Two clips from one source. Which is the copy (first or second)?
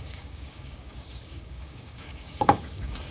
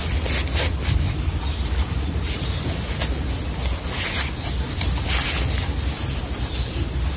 first